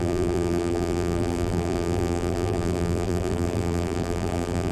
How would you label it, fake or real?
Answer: fake